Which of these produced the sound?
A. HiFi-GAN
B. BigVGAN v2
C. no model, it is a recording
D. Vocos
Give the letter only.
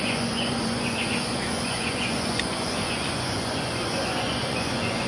D